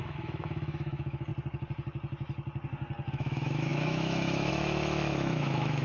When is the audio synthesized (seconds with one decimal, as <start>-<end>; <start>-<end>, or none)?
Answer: 0.0-1.3; 3.1-5.8